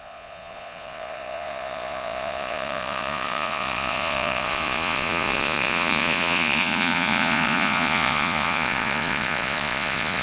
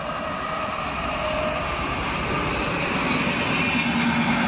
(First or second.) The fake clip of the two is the first